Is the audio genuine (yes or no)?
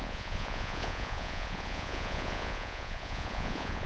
no